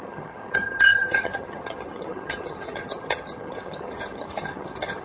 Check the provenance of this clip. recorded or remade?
remade